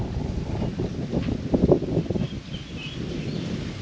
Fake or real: real